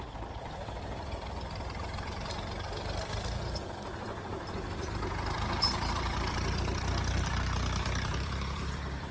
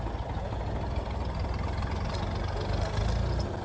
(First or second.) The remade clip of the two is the first